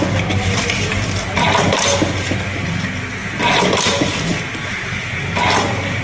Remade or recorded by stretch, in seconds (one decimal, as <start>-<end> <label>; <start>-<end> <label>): 0.0-6.0 recorded